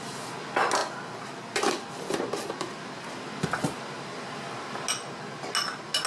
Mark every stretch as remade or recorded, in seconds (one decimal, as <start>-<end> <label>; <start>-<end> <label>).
0.0-0.8 recorded; 0.8-3.1 remade; 3.1-6.1 recorded